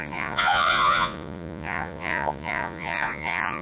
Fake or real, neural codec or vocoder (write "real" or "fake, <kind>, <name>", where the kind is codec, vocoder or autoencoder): fake, vocoder, Vocos